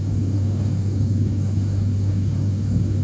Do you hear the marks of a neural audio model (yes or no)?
yes